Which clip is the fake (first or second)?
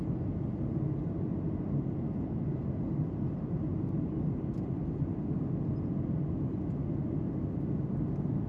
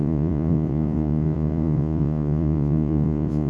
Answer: second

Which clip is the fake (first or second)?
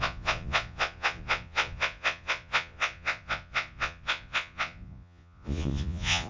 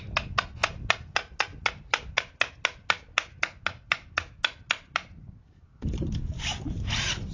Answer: first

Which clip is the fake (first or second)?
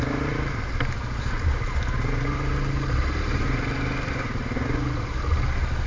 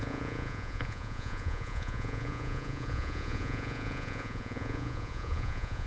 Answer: second